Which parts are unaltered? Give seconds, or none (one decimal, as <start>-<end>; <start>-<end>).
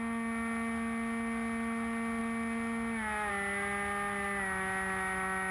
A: 0.0-5.5